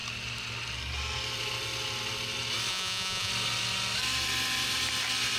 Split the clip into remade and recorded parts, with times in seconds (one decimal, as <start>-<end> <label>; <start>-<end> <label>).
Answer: 0.0-2.7 recorded; 2.7-3.3 remade; 3.3-5.4 recorded